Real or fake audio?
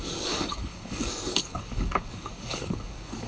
fake